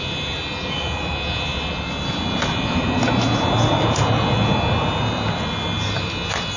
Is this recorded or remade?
recorded